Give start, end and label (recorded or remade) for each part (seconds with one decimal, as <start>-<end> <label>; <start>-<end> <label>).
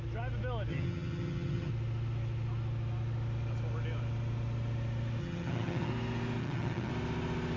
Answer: 0.0-0.7 recorded; 0.7-1.7 remade; 1.7-5.2 recorded; 5.2-5.9 remade; 5.9-6.4 recorded; 6.4-6.9 remade; 6.9-7.6 recorded